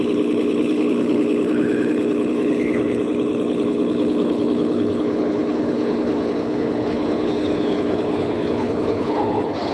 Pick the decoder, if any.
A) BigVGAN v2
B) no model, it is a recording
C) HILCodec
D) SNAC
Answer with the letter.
C